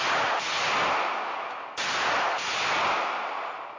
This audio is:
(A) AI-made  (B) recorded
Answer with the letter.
B